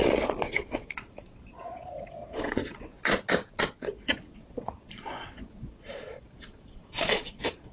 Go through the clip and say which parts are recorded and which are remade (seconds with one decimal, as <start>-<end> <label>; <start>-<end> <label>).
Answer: 0.0-3.0 remade; 3.0-3.6 recorded; 3.6-7.7 remade